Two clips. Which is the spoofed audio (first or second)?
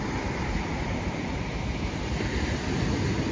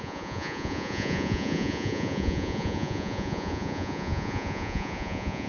second